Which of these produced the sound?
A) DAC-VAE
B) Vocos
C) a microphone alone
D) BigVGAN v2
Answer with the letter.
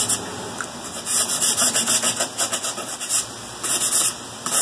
C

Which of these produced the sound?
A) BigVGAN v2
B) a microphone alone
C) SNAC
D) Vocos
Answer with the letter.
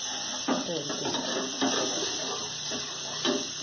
B